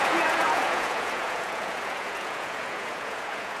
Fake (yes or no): yes